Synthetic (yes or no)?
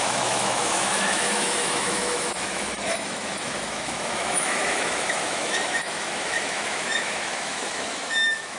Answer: yes